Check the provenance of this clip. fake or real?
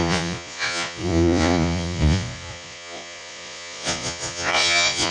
fake